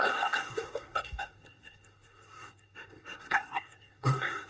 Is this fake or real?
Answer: fake